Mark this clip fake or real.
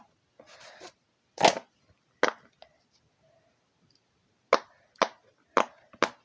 real